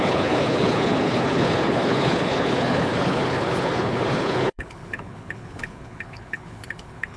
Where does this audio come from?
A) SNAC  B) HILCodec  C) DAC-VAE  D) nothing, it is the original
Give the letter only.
B